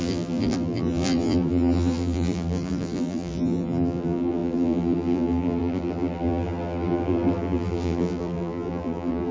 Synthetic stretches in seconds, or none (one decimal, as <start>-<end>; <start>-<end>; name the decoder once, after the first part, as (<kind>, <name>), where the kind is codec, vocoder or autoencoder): 0.0-9.3 (vocoder, BigVGAN v2)